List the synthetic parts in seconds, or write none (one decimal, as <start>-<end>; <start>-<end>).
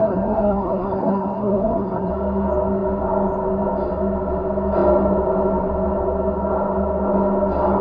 0.0-2.1